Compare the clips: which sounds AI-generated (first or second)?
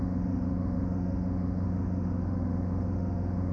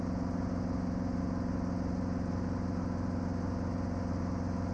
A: first